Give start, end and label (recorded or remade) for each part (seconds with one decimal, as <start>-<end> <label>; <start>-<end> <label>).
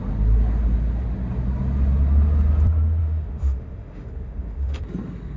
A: 0.0-3.0 recorded; 3.0-4.8 remade; 4.8-5.4 recorded